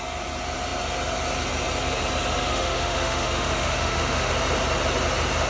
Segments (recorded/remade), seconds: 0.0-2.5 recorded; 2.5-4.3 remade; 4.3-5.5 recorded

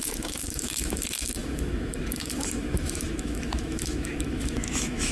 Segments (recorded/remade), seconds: 0.0-5.1 remade

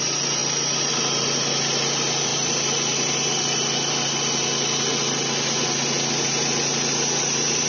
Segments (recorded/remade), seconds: 0.0-7.7 recorded

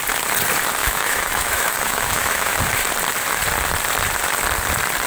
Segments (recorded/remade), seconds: 0.0-0.8 recorded; 0.8-2.6 remade; 2.6-5.1 recorded

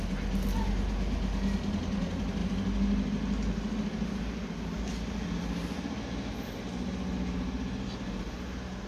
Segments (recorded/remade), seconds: 0.0-8.9 recorded

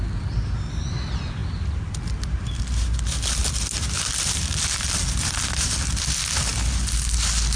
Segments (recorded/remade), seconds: 0.0-7.6 recorded

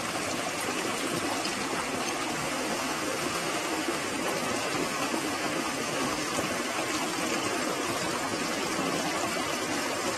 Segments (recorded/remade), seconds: 0.0-2.4 recorded; 2.4-4.1 remade; 4.1-4.8 recorded; 4.8-6.3 remade; 6.3-10.2 recorded

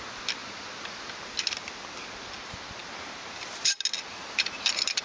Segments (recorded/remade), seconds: 0.0-5.0 recorded